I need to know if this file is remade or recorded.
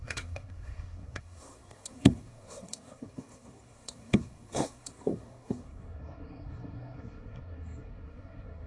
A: remade